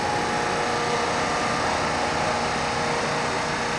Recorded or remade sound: recorded